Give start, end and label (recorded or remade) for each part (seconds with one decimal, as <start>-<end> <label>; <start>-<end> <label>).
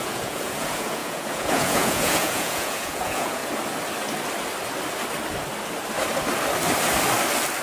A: 0.0-3.4 remade; 3.4-7.6 recorded